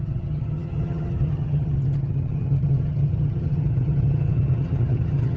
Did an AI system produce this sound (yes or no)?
yes